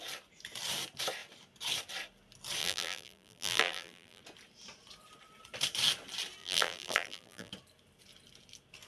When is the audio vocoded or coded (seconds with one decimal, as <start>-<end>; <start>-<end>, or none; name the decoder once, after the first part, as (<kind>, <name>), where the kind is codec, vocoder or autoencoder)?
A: 2.6-4.2 (vocoder, BigVGAN v2); 6.4-7.5